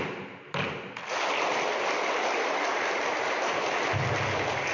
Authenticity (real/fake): real